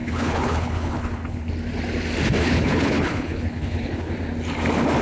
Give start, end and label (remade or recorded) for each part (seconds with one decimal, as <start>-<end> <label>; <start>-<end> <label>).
0.0-1.5 remade; 1.5-2.4 recorded; 2.4-4.1 remade; 4.1-5.0 recorded